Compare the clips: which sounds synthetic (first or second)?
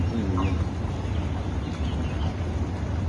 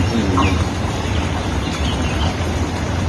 second